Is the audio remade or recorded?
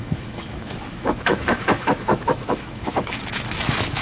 remade